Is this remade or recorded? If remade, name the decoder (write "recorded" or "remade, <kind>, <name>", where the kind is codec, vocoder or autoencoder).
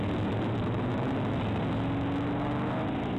recorded